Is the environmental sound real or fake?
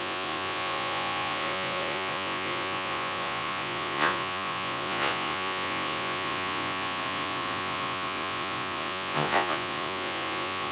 fake